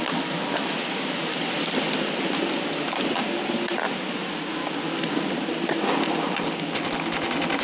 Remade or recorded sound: recorded